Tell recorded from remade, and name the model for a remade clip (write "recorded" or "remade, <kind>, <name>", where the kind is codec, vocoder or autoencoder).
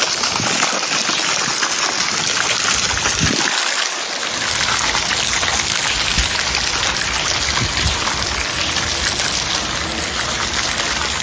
recorded